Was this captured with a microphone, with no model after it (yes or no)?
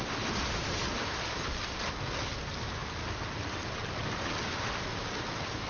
yes